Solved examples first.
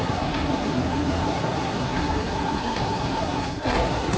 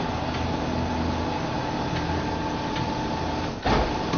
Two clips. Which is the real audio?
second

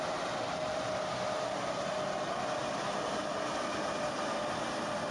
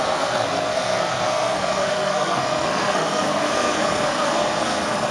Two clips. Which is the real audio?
first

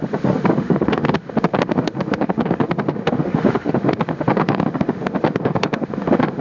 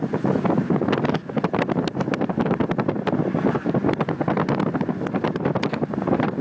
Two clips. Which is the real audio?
second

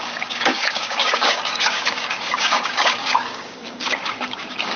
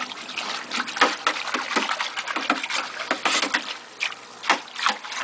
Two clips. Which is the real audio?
second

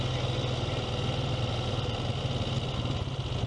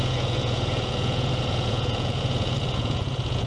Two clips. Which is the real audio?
first